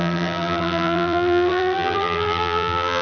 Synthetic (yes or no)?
yes